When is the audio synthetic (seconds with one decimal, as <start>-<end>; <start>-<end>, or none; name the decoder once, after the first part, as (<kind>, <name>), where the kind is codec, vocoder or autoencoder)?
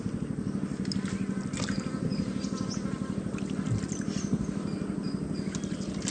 none